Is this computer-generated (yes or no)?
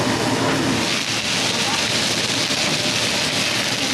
no